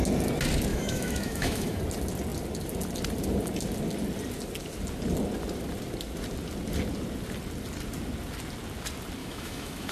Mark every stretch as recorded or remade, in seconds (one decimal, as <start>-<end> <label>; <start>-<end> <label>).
0.0-0.7 recorded; 0.7-1.8 remade; 1.8-9.2 recorded; 9.2-9.9 remade